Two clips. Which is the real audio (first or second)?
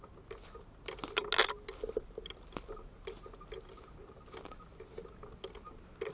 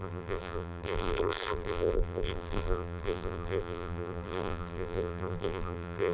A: first